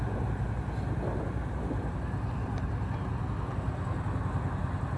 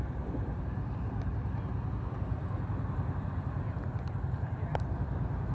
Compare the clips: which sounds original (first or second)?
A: first